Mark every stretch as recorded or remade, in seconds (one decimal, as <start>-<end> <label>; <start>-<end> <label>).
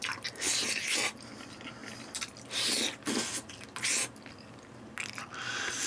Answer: 0.0-5.9 recorded